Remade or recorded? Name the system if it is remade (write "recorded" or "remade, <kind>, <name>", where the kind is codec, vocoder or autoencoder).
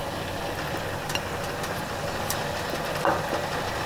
recorded